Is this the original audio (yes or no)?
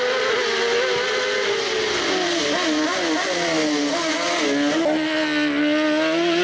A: yes